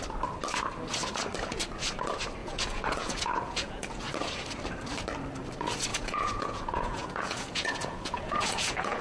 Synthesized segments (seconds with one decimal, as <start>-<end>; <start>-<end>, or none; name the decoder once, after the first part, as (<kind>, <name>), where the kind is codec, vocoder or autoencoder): 2.4-4.0 (vocoder, Vocos); 5.9-9.0